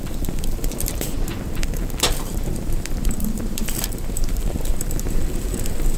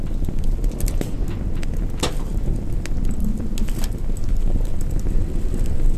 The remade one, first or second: first